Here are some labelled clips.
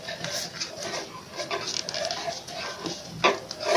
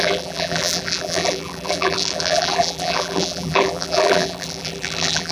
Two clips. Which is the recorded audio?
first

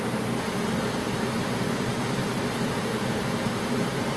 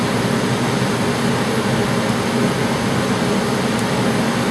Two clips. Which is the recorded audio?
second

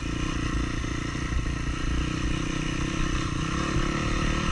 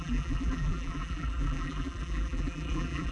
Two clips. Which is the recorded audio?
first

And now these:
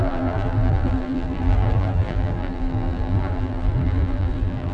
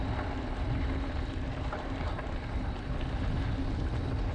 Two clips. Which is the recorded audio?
second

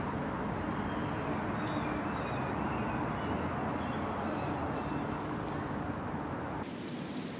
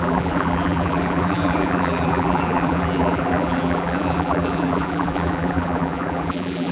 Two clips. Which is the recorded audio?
first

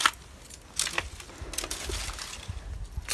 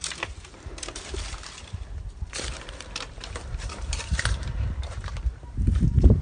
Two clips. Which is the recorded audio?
first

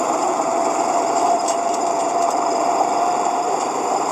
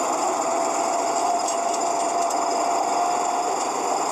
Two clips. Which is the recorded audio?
second